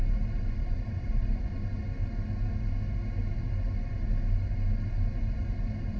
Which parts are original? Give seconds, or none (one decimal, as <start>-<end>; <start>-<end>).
1.8-5.4